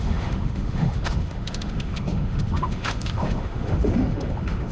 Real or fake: fake